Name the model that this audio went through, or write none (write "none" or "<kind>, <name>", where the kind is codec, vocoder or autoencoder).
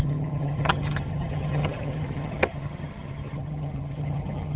vocoder, HiFi-GAN